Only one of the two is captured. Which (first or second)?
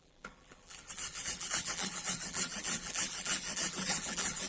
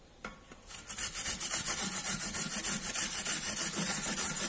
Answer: second